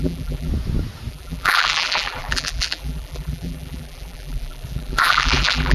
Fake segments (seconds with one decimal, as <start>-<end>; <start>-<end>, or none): 0.0-0.5; 1.1-5.7